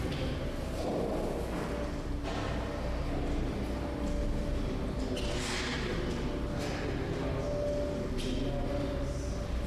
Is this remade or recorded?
recorded